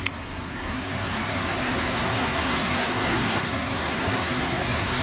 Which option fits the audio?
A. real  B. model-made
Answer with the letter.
B